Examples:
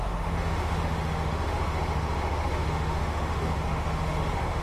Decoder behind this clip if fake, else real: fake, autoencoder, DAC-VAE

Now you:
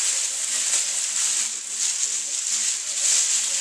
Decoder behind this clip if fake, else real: real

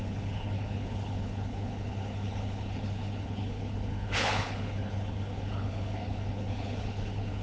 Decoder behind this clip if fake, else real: fake, codec, HILCodec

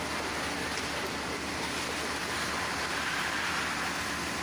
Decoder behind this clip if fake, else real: real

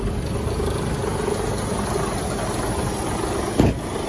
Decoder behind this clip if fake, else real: real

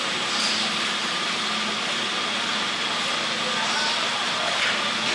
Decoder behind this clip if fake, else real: real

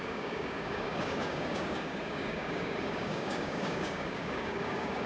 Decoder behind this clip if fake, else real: fake, codec, DAC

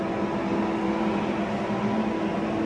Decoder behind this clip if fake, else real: real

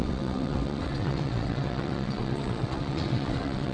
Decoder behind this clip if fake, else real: fake, vocoder, WaveNeXt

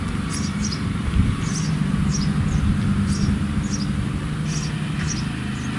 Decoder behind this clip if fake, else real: real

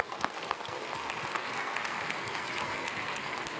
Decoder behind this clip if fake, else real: fake, codec, SNAC